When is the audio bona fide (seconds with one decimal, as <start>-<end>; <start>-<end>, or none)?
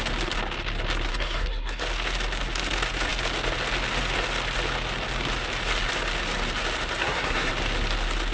0.0-1.1; 1.8-7.0; 7.5-8.3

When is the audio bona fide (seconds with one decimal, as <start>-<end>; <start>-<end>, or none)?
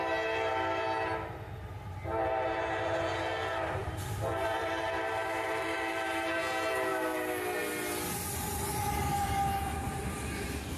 0.0-3.8; 4.7-10.8